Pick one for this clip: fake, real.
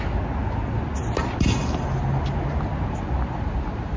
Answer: real